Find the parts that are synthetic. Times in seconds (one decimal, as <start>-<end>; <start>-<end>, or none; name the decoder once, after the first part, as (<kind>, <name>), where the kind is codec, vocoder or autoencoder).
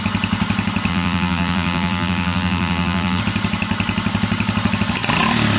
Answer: 0.9-3.2 (vocoder, BigVGAN v2)